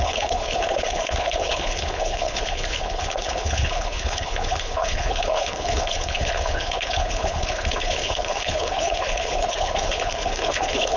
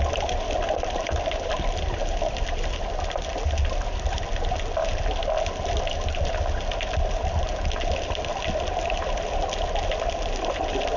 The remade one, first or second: first